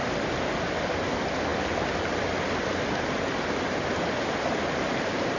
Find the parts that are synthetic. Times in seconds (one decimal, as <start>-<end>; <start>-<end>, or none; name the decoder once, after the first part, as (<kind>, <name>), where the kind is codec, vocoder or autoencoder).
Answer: none